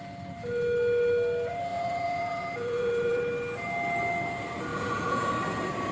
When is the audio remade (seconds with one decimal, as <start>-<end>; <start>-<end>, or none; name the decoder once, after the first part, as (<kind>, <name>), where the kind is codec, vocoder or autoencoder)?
1.7-3.2 (vocoder, Vocos); 4.7-5.3